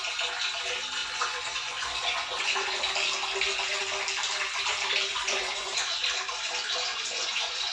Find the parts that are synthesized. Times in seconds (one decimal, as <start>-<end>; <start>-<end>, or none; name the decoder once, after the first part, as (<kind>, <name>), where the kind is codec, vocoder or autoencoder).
1.0-2.8 (vocoder, Vocos); 5.1-6.0; 6.9-7.7

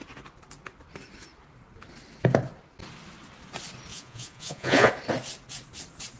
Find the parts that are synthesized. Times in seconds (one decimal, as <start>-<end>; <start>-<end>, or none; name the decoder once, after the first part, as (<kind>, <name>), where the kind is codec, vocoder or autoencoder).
3.9-4.9 (vocoder, Vocos)